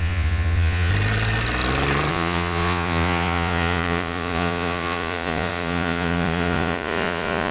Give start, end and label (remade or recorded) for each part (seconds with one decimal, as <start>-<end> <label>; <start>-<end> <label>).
0.0-0.9 remade; 0.9-2.1 recorded; 2.1-7.5 remade